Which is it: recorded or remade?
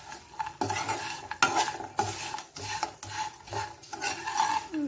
recorded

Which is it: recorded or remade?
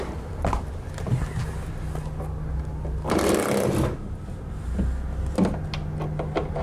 recorded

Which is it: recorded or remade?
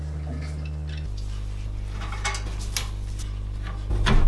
recorded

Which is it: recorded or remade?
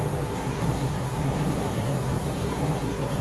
remade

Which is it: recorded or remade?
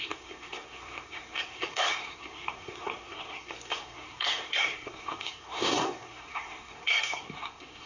remade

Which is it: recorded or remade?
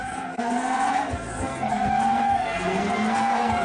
remade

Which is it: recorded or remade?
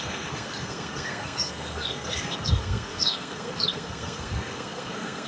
remade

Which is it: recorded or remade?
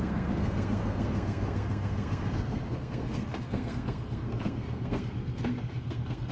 remade